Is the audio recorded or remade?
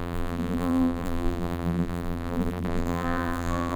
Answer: remade